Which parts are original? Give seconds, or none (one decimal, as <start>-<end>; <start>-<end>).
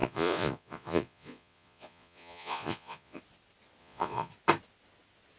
3.2-3.8; 4.3-5.4